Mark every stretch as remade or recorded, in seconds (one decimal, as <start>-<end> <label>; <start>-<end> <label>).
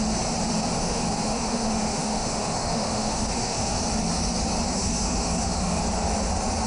0.0-0.8 recorded; 0.8-3.8 remade; 3.8-4.6 recorded; 4.6-5.8 remade; 5.8-6.7 recorded